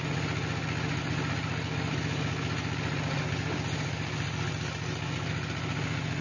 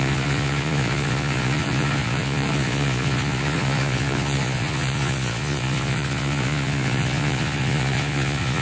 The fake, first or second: second